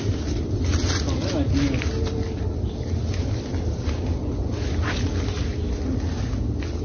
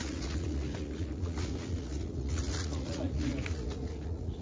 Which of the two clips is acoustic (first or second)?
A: first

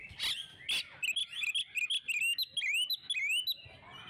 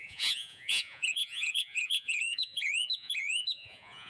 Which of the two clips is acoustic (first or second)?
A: first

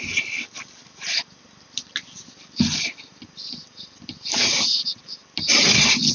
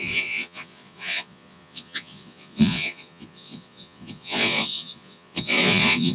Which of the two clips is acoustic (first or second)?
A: first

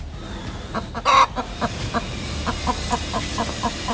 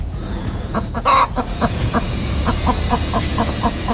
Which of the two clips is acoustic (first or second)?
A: first